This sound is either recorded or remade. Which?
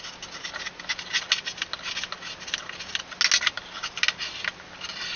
recorded